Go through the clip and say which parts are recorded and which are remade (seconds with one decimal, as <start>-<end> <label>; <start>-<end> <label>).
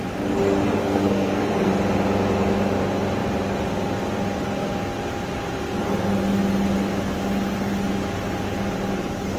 0.0-0.8 recorded; 0.8-1.7 remade; 1.7-9.4 recorded